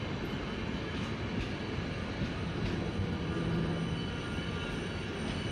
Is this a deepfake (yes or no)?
no